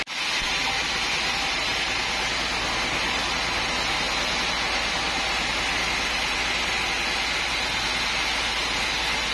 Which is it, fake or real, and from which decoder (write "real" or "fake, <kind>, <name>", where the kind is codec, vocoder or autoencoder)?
real